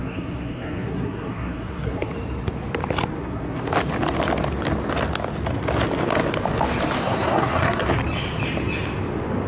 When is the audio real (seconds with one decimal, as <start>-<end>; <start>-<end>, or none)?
2.1-3.2; 3.7-7.0; 7.9-9.5